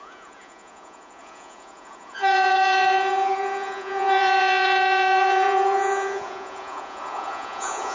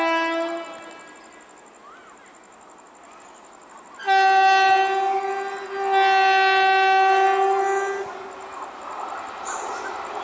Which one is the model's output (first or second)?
first